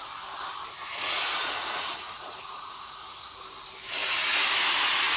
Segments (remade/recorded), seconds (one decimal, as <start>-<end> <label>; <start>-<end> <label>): 0.0-0.8 recorded; 0.8-3.4 remade; 3.4-5.2 recorded